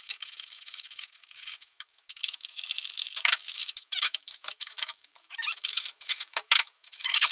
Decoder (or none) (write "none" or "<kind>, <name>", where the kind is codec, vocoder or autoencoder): autoencoder, DAC-VAE